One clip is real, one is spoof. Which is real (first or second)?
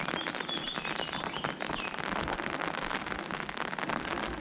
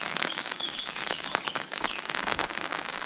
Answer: first